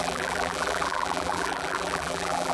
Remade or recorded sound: remade